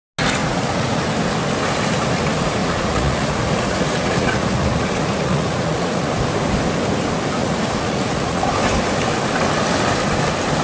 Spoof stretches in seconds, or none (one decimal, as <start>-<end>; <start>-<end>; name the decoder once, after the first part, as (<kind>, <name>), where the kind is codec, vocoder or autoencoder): 0.4-1.0 (vocoder, Vocos); 2.6-6.1; 7.4-8.5